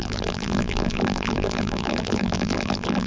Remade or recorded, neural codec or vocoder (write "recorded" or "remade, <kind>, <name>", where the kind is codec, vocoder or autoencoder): remade, vocoder, BigVGAN v2